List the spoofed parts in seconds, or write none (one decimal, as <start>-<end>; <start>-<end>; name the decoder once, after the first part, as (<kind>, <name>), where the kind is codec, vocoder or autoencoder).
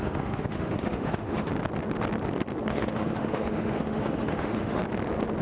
0.0-1.5 (autoencoder, DAC-VAE); 2.7-4.8